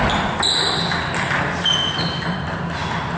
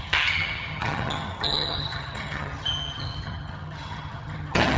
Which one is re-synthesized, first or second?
second